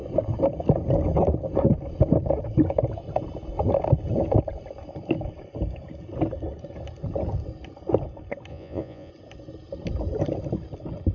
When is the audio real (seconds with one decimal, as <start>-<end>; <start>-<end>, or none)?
0.0-8.5; 9.1-11.1